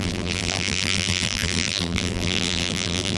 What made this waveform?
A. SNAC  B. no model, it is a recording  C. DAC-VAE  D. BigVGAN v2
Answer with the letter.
D